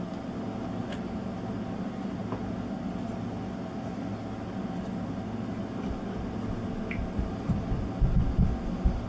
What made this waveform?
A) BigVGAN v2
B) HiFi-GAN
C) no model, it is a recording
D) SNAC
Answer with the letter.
C